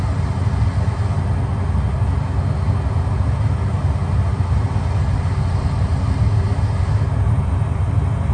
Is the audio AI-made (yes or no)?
no